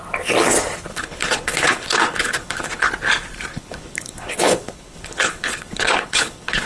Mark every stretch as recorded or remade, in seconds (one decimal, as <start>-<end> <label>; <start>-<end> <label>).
0.0-0.9 recorded; 0.9-2.9 remade; 2.9-3.5 recorded; 3.5-6.7 remade